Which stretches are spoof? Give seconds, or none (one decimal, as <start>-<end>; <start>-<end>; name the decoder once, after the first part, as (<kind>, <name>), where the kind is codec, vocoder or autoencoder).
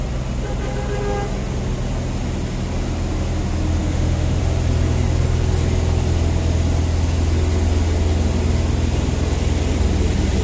3.8-4.4 (autoencoder, DAC-VAE)